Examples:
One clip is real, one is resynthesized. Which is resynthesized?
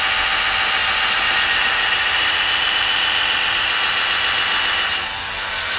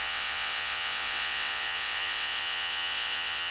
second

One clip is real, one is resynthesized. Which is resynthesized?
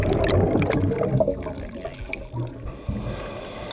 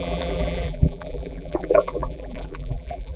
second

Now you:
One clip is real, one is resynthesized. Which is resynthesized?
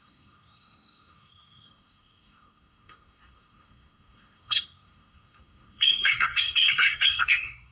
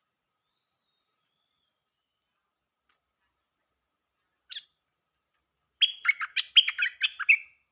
first